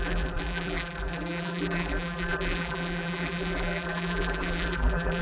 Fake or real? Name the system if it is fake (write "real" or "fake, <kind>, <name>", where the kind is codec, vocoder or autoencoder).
fake, vocoder, BigVGAN v2